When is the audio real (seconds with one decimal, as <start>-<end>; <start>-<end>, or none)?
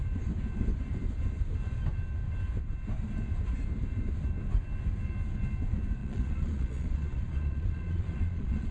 0.0-6.0